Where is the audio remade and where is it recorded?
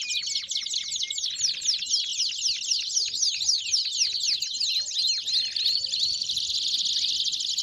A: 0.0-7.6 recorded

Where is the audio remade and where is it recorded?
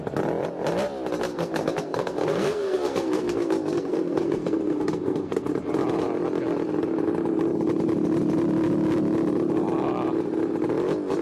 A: 0.0-1.3 recorded; 1.3-5.5 remade; 5.5-11.2 recorded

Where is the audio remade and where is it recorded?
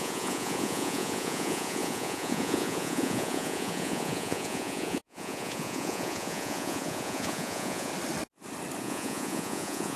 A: 0.0-7.9 remade; 7.9-8.8 recorded; 8.8-10.0 remade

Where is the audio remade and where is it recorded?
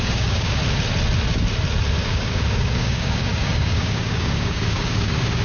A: 0.0-0.6 remade; 0.6-2.0 recorded; 2.0-5.4 remade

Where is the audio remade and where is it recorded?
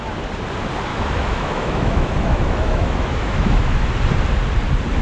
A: 0.0-0.9 recorded; 0.9-3.9 remade; 3.9-5.0 recorded